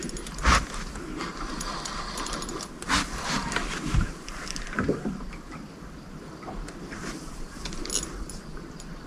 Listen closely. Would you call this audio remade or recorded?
recorded